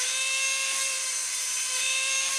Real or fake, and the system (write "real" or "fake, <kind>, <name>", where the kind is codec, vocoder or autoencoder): fake, vocoder, BigVGAN v2